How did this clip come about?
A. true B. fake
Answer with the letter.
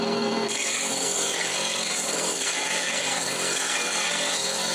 B